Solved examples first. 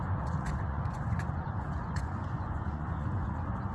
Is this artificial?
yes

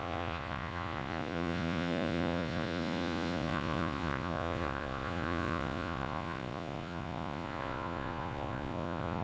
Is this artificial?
yes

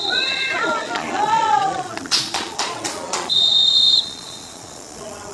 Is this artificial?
yes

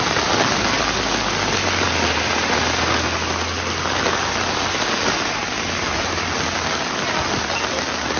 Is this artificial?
no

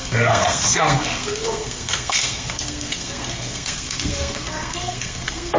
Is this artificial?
yes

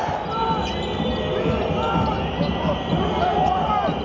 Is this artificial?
no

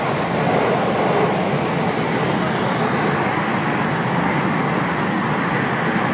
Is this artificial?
no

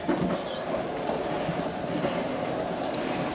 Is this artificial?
no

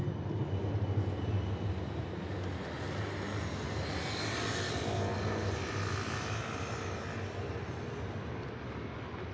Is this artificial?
no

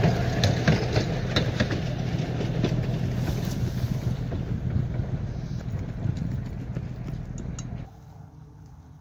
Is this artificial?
no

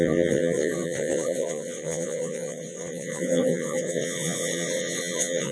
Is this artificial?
yes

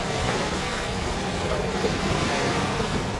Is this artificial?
yes